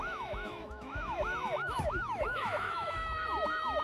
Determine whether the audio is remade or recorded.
remade